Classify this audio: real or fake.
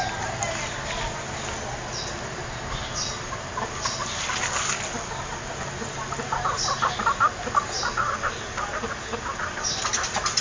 real